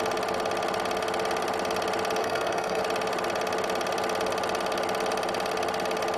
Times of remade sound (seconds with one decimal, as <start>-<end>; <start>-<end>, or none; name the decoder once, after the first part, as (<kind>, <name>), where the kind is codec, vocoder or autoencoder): 2.2-2.8 (codec, SNAC)